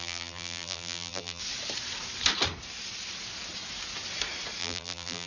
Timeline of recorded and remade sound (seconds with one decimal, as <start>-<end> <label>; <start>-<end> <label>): 0.0-1.4 remade; 1.4-4.6 recorded; 4.6-5.3 remade